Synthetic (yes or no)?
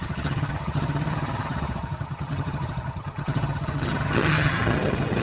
yes